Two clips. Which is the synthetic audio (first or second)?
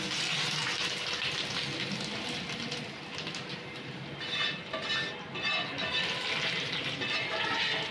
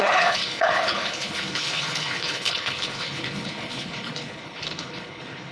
second